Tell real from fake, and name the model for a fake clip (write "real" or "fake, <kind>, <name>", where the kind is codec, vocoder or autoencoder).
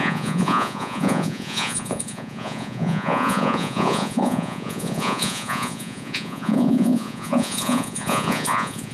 fake, vocoder, Vocos